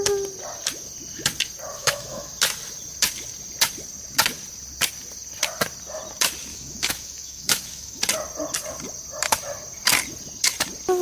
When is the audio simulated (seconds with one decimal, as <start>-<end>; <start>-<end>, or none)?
1.8-2.3; 6.5-8.0